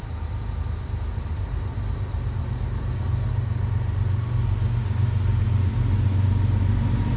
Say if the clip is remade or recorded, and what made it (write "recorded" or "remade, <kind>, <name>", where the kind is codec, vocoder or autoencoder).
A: recorded